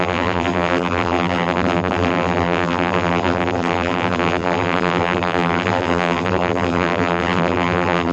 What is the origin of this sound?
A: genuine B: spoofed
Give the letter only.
B